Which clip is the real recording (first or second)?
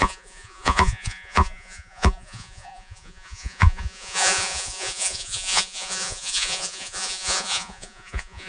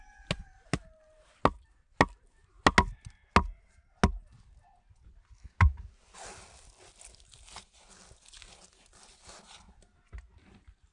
second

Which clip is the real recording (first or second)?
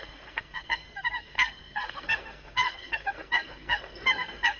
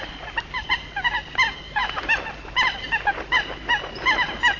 second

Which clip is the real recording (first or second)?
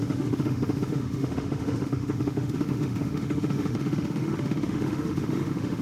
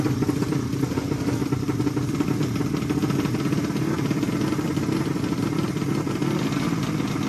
second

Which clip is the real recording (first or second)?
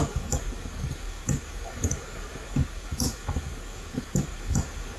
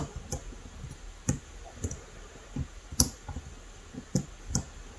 second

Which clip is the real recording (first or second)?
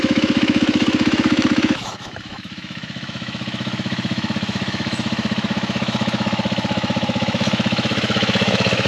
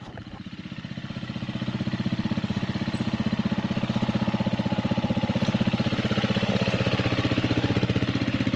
second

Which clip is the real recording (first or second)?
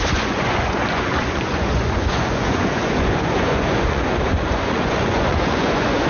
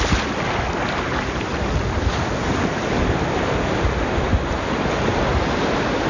second